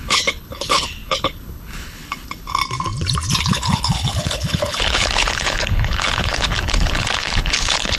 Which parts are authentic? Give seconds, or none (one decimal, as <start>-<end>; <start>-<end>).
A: 2.6-3.4